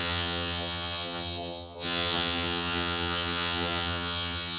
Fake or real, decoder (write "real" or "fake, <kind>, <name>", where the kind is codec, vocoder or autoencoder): fake, vocoder, HiFi-GAN